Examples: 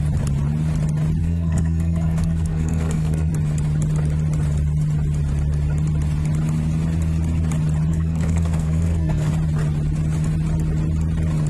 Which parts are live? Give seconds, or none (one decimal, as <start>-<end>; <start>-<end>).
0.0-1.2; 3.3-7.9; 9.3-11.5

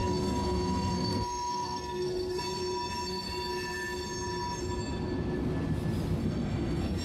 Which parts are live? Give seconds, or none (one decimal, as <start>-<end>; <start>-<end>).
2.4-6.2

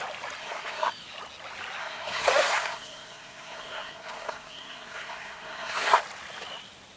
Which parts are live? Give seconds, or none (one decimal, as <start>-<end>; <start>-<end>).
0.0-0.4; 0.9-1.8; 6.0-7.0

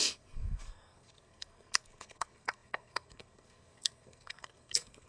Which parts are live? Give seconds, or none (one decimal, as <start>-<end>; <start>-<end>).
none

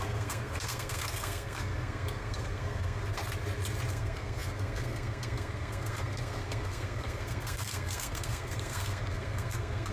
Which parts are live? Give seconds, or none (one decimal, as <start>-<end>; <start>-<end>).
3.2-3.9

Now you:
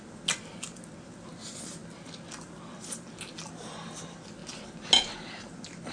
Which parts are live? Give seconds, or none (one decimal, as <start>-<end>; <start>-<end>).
0.0-5.9